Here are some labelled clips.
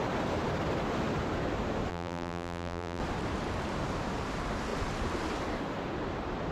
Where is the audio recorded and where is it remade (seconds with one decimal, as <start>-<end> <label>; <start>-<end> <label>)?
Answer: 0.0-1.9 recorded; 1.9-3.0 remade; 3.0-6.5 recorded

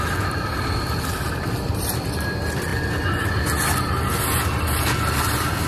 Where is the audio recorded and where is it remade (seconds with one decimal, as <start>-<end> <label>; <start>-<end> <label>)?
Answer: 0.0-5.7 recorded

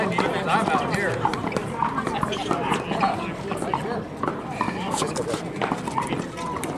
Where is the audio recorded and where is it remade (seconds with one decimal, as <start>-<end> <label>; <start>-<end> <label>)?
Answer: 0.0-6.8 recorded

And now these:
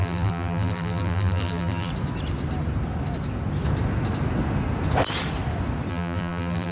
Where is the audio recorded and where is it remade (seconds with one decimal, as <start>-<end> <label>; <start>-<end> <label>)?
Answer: 0.0-1.9 remade; 1.9-5.9 recorded; 5.9-6.7 remade

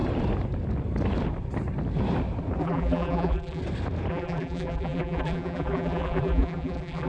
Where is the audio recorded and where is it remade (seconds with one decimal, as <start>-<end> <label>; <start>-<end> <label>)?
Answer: 0.0-2.6 recorded; 2.6-3.6 remade; 3.6-4.1 recorded; 4.1-7.1 remade